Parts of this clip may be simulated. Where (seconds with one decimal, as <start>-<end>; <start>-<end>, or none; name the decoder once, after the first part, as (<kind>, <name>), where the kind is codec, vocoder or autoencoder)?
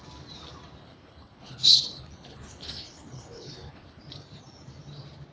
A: 0.8-4.0 (codec, HILCodec)